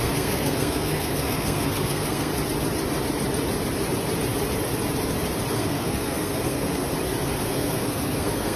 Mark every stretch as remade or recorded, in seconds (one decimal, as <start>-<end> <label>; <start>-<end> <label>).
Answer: 0.0-2.3 remade; 2.3-5.5 recorded; 5.5-6.8 remade; 6.8-7.4 recorded; 7.4-8.6 remade